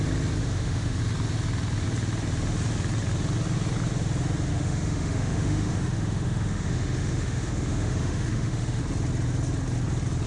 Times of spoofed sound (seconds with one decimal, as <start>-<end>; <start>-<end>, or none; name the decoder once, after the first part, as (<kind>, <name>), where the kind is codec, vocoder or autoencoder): 0.4-1.0 (autoencoder, DAC-VAE); 4.5-8.8